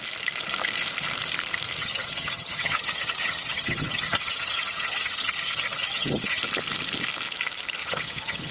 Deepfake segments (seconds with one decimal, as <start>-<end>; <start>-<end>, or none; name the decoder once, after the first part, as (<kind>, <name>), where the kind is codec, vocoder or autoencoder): 1.8-6.4 (vocoder, HiFi-GAN); 7.8-8.5